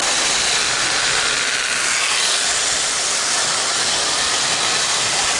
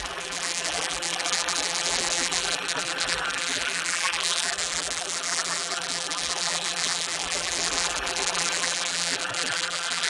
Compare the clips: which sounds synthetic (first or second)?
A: second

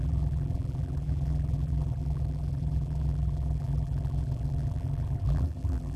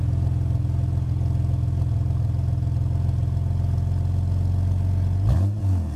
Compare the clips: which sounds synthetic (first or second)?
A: first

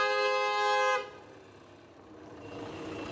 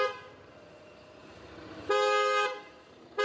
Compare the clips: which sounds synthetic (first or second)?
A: second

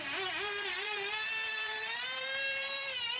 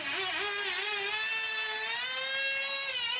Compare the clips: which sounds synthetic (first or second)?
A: first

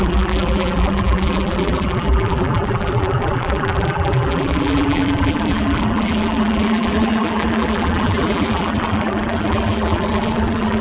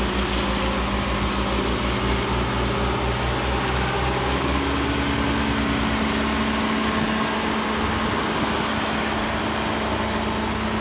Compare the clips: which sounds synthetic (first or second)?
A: first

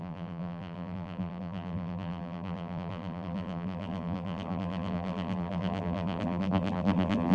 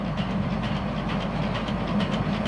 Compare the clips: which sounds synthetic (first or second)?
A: first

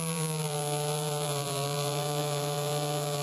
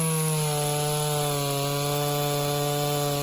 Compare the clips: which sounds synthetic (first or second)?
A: first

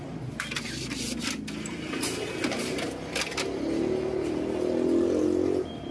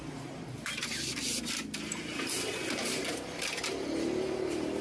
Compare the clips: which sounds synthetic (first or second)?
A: second